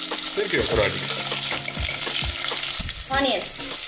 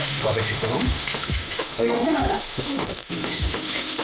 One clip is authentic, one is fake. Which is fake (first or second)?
second